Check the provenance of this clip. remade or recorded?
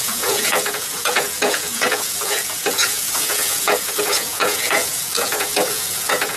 remade